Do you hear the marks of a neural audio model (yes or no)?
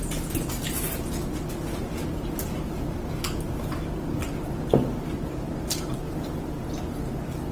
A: no